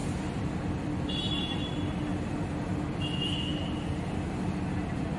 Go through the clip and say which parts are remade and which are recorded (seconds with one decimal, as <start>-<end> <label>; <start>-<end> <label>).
0.0-1.7 remade; 1.7-2.1 recorded; 2.1-2.6 remade; 2.6-5.2 recorded